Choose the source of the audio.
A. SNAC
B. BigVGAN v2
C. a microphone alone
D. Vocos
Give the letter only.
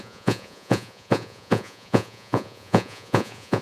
D